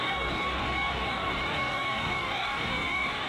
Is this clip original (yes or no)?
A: no